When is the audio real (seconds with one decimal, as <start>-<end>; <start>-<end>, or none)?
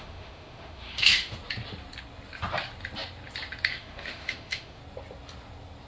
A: 1.3-3.7; 4.8-5.9